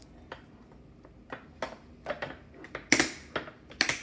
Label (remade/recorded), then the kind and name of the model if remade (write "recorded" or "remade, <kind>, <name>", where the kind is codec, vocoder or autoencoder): recorded